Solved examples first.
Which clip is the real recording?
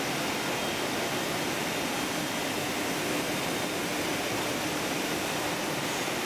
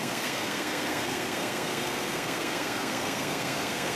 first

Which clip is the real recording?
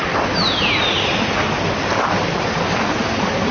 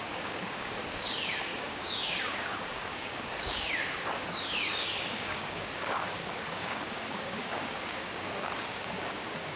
first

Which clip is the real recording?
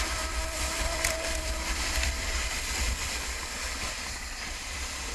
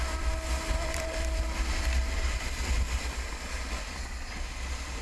second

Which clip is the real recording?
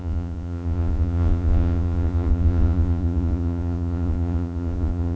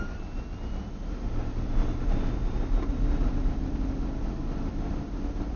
second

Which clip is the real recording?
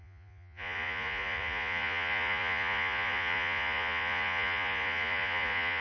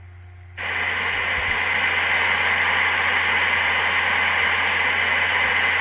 second